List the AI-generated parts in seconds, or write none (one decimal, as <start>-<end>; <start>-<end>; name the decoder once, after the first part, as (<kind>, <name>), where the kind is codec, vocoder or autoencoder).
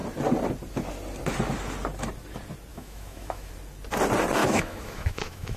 2.7-3.5 (autoencoder, DAC-VAE); 4.4-5.6